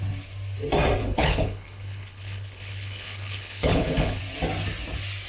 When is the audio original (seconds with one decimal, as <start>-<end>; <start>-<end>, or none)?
0.0-1.0; 4.2-5.3